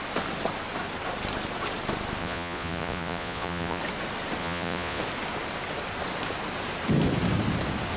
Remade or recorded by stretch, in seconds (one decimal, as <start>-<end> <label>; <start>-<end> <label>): 0.0-2.2 recorded; 2.2-3.8 remade; 3.8-4.4 recorded; 4.4-5.0 remade; 5.0-8.0 recorded